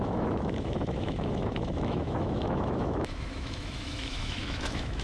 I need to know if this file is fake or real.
fake